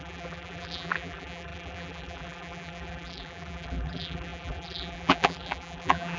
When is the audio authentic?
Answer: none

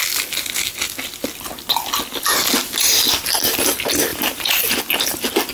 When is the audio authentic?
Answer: 0.0-2.6; 3.5-4.1; 4.8-5.5

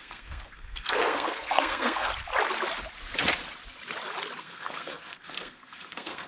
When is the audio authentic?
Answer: 2.1-4.4

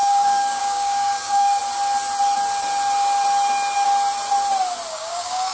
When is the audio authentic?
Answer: 1.6-4.9

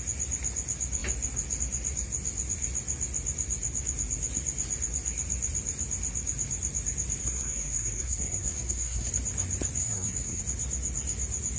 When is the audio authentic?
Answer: 0.0-7.2; 9.1-9.8; 10.4-11.6

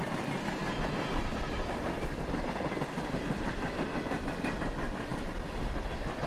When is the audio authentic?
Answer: 0.0-6.3

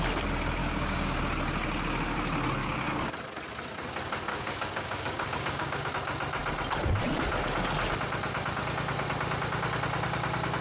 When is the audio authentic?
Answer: 0.0-0.6; 1.2-2.6; 3.1-4.3; 5.9-10.6

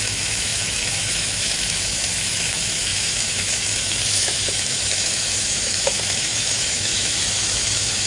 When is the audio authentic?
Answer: none